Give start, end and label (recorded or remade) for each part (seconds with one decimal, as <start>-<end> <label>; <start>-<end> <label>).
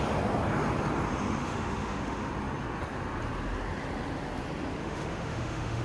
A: 0.0-1.4 recorded; 1.4-2.3 remade; 2.3-4.8 recorded; 4.8-5.8 remade